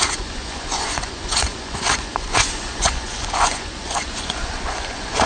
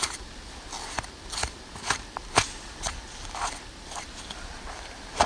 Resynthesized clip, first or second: first